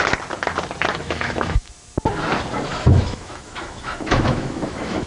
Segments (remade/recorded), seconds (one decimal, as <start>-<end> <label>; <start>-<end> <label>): 0.0-0.9 recorded; 0.9-1.7 remade; 1.7-2.7 recorded; 2.7-5.1 remade